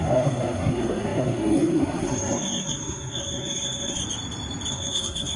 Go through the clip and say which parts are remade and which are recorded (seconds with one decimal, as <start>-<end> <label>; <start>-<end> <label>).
0.0-4.0 remade; 4.0-4.7 recorded; 4.7-5.4 remade